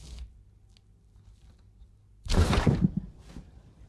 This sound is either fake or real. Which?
real